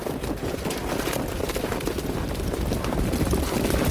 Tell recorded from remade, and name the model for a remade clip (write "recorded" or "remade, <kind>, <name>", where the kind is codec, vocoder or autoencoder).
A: recorded